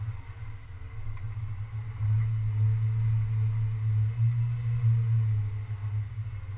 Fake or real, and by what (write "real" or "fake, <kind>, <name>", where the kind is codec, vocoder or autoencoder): real